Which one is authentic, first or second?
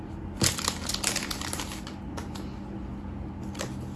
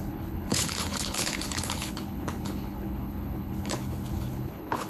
first